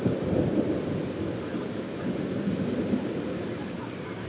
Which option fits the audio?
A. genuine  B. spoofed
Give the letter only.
A